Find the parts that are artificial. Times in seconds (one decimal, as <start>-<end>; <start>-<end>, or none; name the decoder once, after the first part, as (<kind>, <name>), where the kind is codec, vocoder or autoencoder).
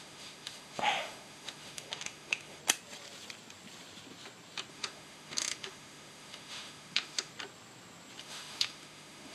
0.0-2.6 (autoencoder, DAC-VAE); 4.7-7.3; 8.2-9.3